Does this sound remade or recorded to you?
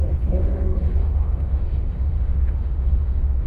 remade